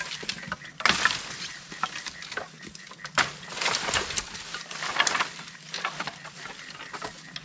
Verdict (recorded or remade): recorded